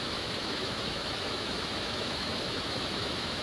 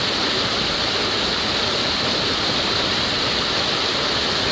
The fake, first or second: first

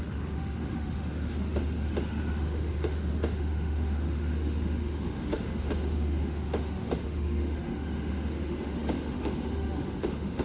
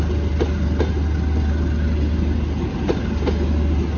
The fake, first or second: first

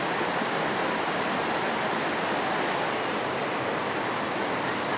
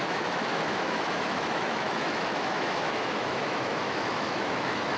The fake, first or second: second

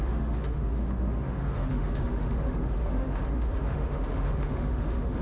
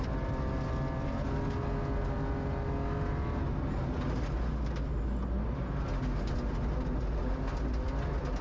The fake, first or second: first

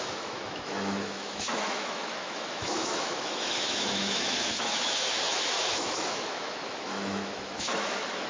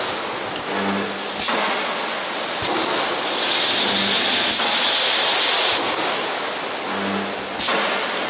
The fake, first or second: first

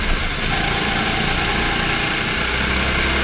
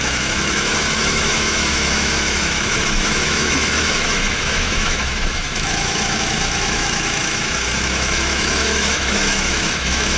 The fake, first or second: second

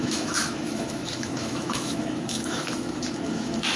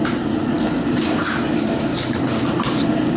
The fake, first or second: first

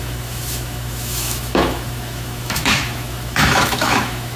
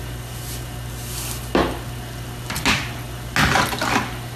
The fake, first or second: first